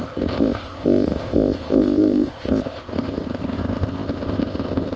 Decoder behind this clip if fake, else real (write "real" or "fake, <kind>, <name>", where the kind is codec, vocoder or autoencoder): fake, codec, ZipCodec